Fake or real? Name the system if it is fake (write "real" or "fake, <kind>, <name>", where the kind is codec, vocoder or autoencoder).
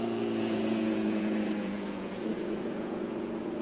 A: fake, vocoder, Vocos